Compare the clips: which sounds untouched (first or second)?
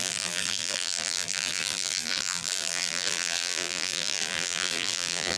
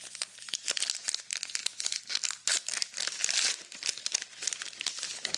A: second